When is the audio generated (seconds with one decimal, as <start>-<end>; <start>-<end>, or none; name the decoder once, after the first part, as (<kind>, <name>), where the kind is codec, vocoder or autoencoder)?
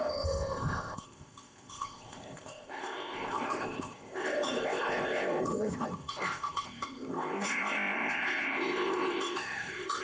0.0-10.0 (codec, ZipCodec)